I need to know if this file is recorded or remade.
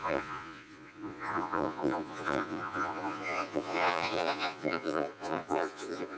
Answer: remade